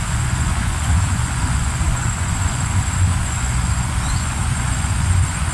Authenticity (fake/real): fake